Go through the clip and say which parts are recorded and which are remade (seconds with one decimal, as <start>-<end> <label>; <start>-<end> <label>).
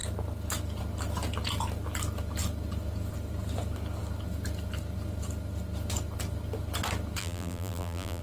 0.0-7.2 recorded; 7.2-8.2 remade